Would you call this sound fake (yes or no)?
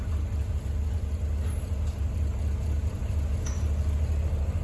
no